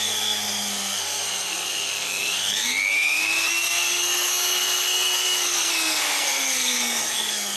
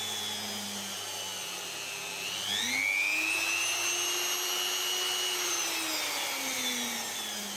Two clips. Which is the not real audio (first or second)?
first